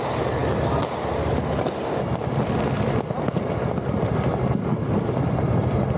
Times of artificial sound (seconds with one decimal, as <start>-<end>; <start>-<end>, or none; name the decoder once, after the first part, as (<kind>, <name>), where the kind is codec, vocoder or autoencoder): none